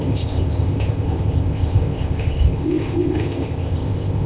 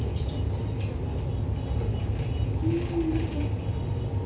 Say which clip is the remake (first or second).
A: first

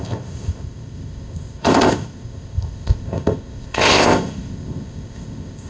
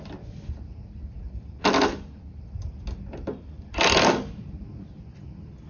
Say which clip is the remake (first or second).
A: first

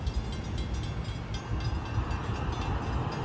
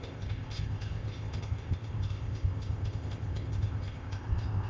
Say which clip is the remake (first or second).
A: second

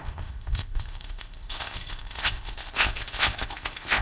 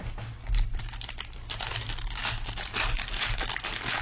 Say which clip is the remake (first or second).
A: first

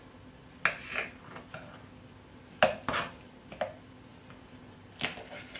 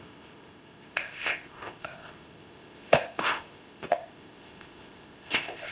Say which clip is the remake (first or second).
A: second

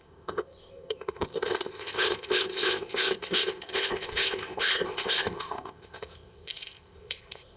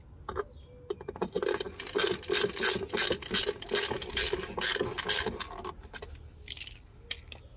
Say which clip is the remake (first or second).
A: first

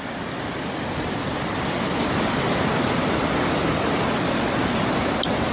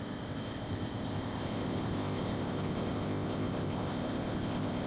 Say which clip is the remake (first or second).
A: second